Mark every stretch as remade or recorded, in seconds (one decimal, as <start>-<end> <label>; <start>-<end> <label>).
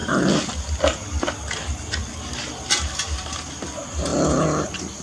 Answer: 0.0-2.0 recorded; 2.0-2.5 remade; 2.5-5.0 recorded